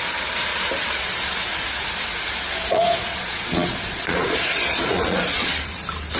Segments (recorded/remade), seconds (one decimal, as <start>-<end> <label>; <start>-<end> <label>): 0.0-2.6 recorded; 2.6-5.5 remade; 5.5-6.2 recorded